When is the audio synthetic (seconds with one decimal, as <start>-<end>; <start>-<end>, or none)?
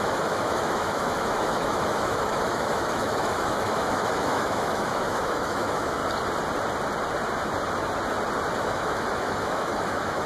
0.0-6.0; 8.6-10.3